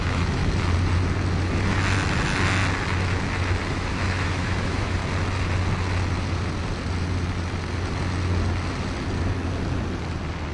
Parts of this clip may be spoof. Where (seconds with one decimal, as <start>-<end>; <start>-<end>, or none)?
0.0-0.4; 3.7-5.0